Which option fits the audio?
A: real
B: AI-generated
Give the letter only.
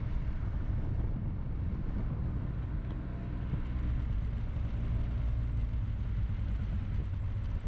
A